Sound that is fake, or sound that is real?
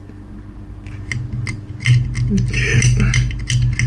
real